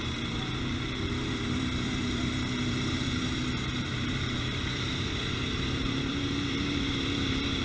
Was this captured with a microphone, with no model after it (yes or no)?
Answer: no